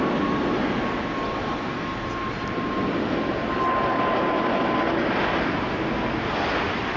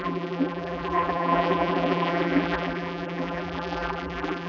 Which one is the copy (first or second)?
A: second